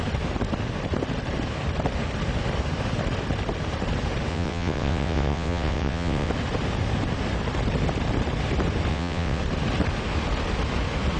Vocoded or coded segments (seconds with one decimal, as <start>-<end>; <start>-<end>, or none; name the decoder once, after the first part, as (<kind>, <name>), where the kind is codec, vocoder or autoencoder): 4.3-6.3 (vocoder, WaveNeXt); 8.9-9.4